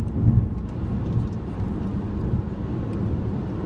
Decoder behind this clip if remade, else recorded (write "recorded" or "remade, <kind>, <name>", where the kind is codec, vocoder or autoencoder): recorded